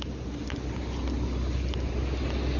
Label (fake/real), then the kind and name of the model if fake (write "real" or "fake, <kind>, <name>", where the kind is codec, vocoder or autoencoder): real